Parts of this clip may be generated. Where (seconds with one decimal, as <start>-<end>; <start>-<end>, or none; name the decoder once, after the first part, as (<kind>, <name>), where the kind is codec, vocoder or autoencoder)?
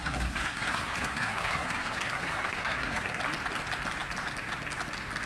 0.0-3.2 (codec, SNAC)